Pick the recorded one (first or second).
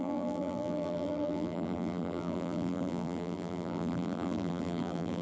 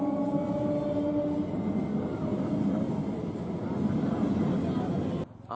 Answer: second